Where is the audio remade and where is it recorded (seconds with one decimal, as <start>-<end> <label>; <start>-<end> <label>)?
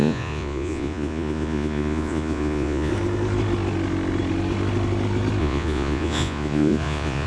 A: 0.0-2.9 remade; 2.9-5.4 recorded; 5.4-7.3 remade